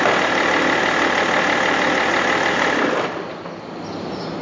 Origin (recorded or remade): recorded